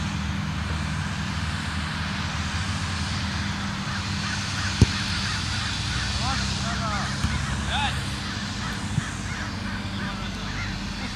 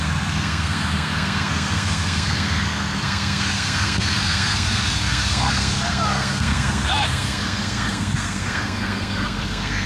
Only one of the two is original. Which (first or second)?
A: first